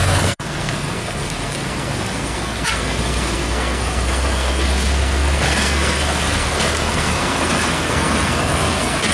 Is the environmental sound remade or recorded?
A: remade